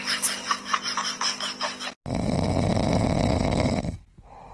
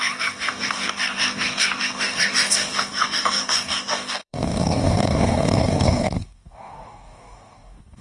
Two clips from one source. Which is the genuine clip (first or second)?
first